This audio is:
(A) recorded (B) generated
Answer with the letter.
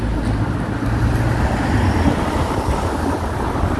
A